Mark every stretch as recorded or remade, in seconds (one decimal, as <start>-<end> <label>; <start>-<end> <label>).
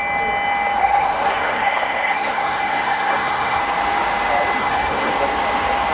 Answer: 0.0-0.8 recorded; 0.8-3.6 remade; 3.6-4.6 recorded; 4.6-5.1 remade; 5.1-5.9 recorded